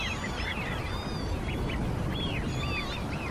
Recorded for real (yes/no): yes